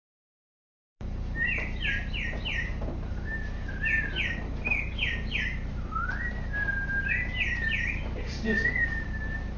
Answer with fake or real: fake